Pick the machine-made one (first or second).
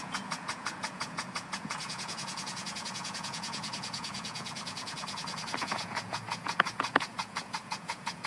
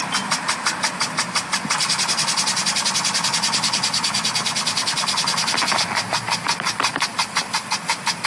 first